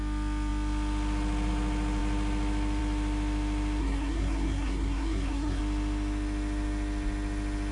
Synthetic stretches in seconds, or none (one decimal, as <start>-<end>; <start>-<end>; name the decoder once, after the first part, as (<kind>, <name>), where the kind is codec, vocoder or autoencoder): 3.8-5.6 (codec, SNAC)